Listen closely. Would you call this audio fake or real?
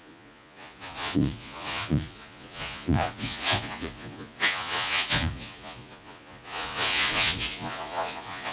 fake